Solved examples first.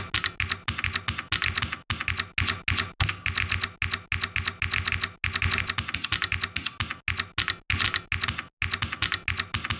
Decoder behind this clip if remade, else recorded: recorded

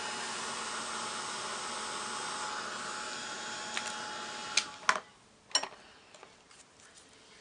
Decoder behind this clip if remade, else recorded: recorded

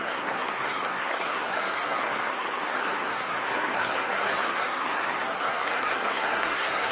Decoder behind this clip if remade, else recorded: remade, codec, SNAC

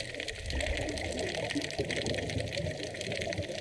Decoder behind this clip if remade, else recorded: recorded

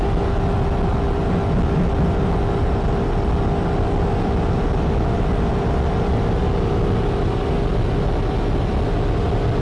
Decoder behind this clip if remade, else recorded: recorded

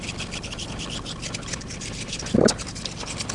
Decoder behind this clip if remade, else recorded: recorded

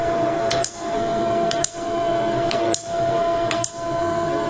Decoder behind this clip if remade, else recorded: remade, codec, SNAC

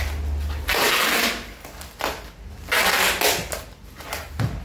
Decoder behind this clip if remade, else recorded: recorded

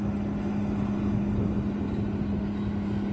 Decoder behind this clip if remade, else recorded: recorded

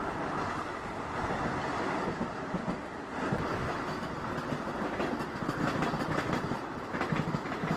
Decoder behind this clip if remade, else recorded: recorded